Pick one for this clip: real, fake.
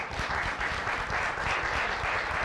real